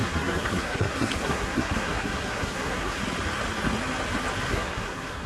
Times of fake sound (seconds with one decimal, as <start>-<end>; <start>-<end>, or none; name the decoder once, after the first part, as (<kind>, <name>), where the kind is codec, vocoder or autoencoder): 0.0-3.0 (codec, SNAC); 4.5-5.3